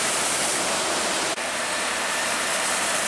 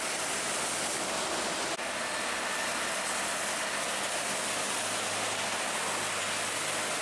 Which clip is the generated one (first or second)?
first